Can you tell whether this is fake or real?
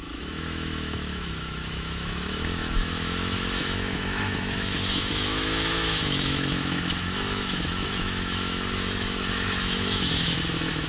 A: fake